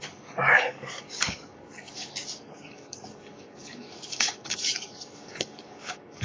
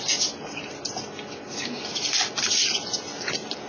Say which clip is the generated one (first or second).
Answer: first